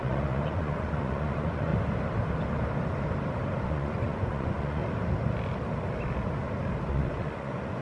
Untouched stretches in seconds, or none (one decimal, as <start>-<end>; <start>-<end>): 1.7-3.6; 4.8-6.9